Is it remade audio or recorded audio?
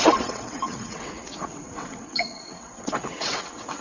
remade